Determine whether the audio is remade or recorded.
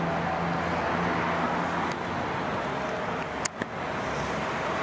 recorded